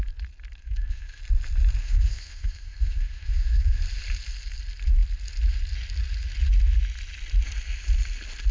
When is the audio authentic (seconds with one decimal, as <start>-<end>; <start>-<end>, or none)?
0.0-0.6; 1.2-1.8; 3.8-8.5